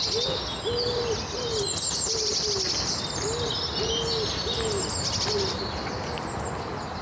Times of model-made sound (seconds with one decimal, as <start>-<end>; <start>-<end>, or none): none